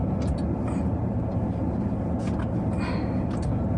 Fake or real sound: real